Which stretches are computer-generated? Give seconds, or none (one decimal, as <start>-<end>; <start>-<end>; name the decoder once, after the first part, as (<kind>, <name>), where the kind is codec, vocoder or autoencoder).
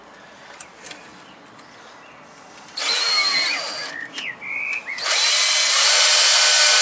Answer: none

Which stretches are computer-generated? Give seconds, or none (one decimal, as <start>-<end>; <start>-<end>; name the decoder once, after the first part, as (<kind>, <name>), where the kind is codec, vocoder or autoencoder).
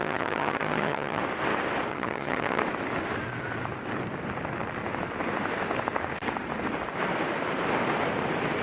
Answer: 0.0-1.2 (vocoder, HiFi-GAN); 1.9-2.6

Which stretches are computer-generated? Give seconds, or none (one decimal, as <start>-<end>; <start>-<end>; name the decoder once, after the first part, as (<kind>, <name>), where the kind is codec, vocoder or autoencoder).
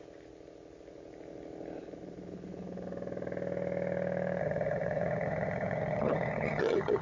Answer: 4.4-7.0 (vocoder, HiFi-GAN)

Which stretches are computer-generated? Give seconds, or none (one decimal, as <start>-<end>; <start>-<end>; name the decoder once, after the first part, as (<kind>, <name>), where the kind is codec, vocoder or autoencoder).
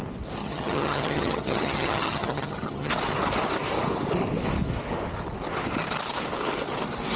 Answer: 0.4-2.9 (vocoder, HiFi-GAN)